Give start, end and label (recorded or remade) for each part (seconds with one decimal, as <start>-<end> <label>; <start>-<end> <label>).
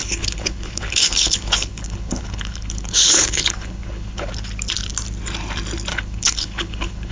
0.0-4.3 remade; 4.3-5.9 recorded; 5.9-7.1 remade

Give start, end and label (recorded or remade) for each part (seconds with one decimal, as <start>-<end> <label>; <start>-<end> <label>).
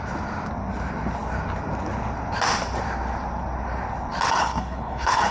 0.0-4.4 recorded; 4.4-5.3 remade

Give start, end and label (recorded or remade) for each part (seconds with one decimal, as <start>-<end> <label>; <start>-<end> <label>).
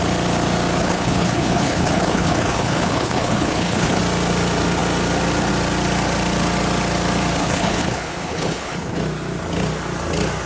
0.0-0.8 recorded; 0.8-4.0 remade; 4.0-7.4 recorded; 7.4-9.0 remade; 9.0-10.5 recorded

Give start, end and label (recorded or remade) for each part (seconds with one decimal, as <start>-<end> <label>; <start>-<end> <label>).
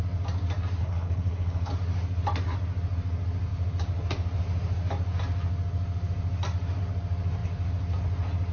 0.0-0.8 recorded; 0.8-1.7 remade; 1.7-8.5 recorded